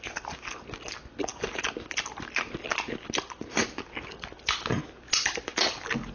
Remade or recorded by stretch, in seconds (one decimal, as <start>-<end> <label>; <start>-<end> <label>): 0.0-6.1 recorded